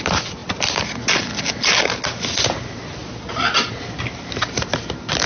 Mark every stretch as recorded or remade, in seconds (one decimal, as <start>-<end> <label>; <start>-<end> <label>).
0.0-5.3 recorded